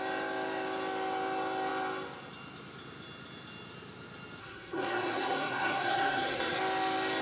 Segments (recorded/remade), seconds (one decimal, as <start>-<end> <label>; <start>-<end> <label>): 0.0-4.4 recorded; 4.4-6.6 remade; 6.6-7.2 recorded